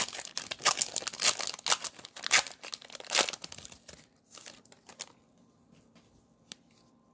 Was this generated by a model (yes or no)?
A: no